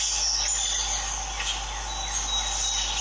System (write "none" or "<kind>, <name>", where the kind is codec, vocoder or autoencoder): none